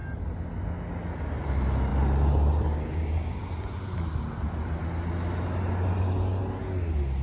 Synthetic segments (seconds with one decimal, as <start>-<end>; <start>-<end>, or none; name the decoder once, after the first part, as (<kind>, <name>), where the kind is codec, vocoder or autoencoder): none